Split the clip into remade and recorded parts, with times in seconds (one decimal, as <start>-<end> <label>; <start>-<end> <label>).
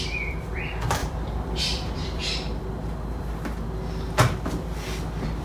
0.0-2.2 remade; 2.2-5.4 recorded